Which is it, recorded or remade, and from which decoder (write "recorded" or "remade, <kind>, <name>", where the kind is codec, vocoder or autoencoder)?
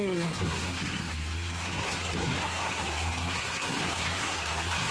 remade, codec, SNAC